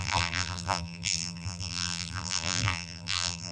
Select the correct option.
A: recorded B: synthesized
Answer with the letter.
B